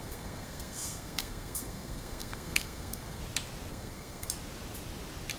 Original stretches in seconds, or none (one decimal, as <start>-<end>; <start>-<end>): 3.2-3.7; 4.3-5.4